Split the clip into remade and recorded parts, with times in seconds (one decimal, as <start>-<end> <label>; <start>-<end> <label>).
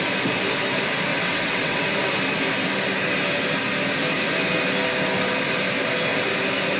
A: 0.0-1.1 recorded; 1.1-1.8 remade; 1.8-6.8 recorded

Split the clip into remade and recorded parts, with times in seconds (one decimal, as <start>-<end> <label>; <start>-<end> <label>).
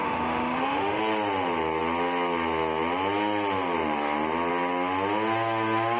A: 0.0-1.0 remade; 1.0-6.0 recorded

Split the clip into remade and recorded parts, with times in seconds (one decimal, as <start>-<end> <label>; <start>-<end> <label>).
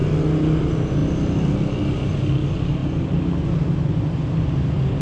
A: 0.0-5.0 recorded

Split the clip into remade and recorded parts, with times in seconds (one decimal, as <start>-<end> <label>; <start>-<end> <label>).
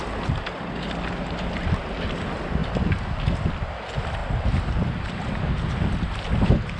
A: 0.0-4.2 recorded; 4.2-5.4 remade; 5.4-6.8 recorded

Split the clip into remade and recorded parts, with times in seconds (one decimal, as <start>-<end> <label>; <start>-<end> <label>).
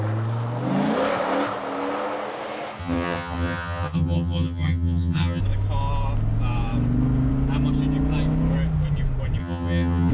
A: 0.0-2.8 recorded; 2.8-5.4 remade; 5.4-9.4 recorded; 9.4-10.1 remade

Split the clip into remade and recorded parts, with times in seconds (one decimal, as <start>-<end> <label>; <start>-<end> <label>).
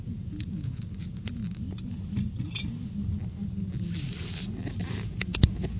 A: 0.0-1.4 remade; 1.4-4.9 recorded; 4.9-5.8 remade